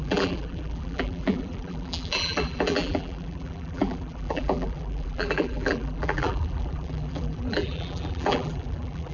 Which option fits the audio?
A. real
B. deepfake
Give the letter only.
B